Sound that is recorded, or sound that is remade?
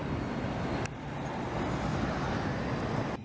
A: recorded